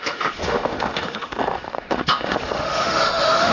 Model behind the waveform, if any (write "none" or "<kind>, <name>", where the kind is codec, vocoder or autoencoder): autoencoder, DAC-VAE